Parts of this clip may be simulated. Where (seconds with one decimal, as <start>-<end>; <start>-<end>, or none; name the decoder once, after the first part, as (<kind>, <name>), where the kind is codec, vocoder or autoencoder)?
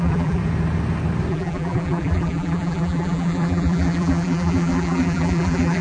0.0-0.4 (vocoder, BigVGAN v2); 1.3-5.8